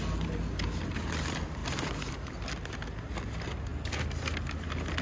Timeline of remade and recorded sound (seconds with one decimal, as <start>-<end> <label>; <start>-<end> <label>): 0.0-5.0 recorded